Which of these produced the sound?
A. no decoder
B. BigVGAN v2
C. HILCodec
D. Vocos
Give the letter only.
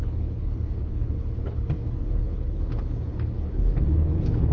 C